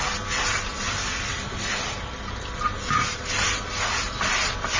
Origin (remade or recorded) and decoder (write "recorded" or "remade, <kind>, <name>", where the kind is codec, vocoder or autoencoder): recorded